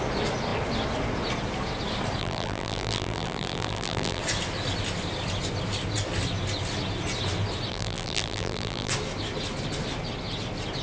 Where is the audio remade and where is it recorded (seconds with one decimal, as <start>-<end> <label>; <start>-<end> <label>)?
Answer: 0.0-2.2 recorded; 2.2-4.2 remade; 4.2-7.7 recorded; 7.7-8.9 remade; 8.9-10.8 recorded